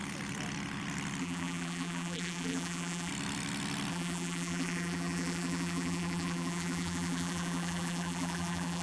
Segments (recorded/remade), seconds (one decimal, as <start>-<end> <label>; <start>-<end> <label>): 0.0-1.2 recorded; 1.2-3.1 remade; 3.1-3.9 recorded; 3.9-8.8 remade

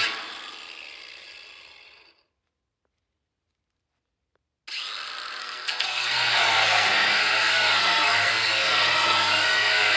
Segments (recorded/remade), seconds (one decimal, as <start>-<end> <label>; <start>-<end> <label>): 0.0-5.4 recorded; 5.4-10.0 remade

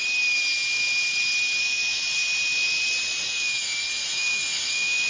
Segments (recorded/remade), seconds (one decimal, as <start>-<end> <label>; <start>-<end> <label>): 0.0-1.6 recorded; 1.6-2.0 remade; 2.0-3.3 recorded; 3.3-5.1 remade

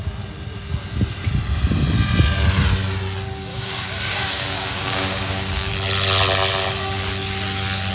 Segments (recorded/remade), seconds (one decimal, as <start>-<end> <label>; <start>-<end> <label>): 0.0-3.5 recorded; 3.5-5.7 remade; 5.7-7.9 recorded